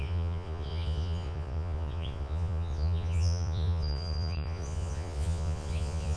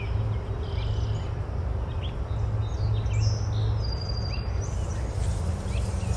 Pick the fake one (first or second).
first